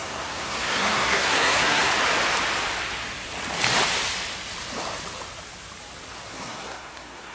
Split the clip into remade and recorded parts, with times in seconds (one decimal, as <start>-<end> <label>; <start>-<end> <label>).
0.0-1.9 remade; 1.9-6.3 recorded; 6.3-7.3 remade